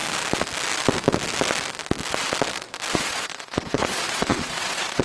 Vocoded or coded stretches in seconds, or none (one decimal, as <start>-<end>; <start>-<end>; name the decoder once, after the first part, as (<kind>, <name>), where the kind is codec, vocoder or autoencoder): 3.0-5.0 (vocoder, Vocos)